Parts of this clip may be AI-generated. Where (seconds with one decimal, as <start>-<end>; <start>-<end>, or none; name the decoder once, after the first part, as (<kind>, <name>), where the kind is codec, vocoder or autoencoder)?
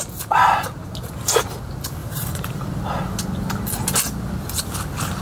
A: 2.0-2.6 (vocoder, BigVGAN v2)